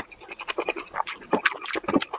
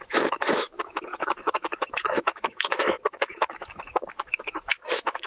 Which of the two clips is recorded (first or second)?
first